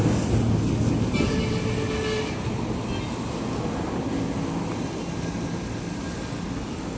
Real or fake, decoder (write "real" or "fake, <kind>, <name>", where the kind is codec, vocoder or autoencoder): real